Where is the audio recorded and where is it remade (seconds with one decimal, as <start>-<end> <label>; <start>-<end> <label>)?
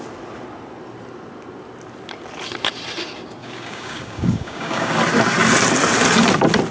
0.0-3.4 recorded; 3.4-4.9 remade; 4.9-6.7 recorded